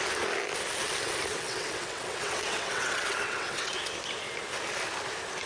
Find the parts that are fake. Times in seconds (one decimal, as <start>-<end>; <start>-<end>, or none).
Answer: 1.3-3.7